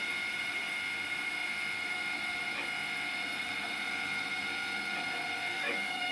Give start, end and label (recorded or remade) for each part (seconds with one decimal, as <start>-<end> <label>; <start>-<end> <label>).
0.0-5.5 recorded; 5.5-6.1 remade